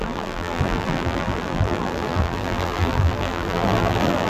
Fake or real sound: fake